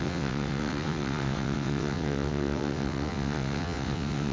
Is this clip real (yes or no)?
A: no